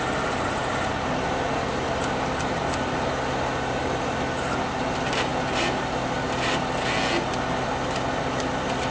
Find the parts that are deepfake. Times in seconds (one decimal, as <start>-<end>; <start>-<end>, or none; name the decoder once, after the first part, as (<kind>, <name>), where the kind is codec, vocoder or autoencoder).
none

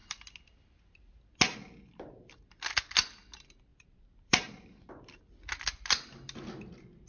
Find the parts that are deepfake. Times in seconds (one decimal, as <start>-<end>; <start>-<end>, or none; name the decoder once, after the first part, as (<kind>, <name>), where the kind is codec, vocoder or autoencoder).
3.7-4.9 (vocoder, BigVGAN v2)

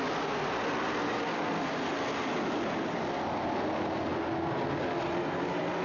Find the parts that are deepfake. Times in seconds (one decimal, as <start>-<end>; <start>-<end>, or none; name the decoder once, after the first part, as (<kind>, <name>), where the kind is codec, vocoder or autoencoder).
none

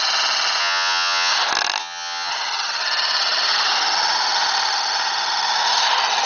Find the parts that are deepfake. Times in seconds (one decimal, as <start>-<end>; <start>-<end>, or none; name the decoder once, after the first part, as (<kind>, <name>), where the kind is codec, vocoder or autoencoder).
0.6-1.3 (vocoder, HiFi-GAN); 1.8-2.3

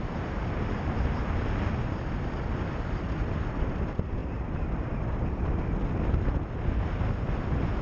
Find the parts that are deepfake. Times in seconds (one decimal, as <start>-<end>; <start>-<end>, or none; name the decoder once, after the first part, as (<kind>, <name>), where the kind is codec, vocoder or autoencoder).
none

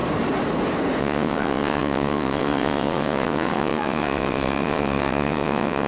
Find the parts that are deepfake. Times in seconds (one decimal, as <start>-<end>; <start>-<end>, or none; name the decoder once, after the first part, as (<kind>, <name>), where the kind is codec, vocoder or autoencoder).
1.0-5.9 (vocoder, WaveNeXt)

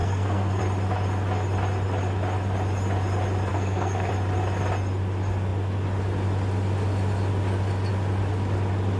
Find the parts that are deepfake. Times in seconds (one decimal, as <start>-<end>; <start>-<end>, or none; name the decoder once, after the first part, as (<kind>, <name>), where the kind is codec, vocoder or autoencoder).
0.0-0.6 (codec, SNAC); 3.5-4.1